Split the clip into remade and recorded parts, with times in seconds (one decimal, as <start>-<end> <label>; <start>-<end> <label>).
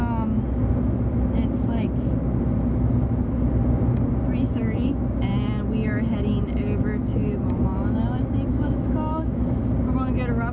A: 0.0-8.5 recorded; 8.5-9.6 remade; 9.6-10.5 recorded